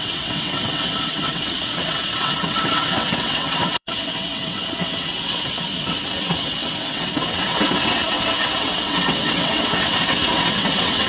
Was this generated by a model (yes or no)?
yes